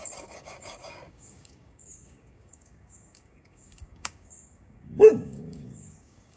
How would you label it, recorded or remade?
remade